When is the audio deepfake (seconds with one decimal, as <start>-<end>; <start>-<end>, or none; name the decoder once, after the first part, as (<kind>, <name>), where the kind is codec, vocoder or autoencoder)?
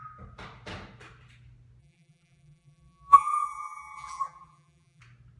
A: 1.8-5.0 (vocoder, BigVGAN v2)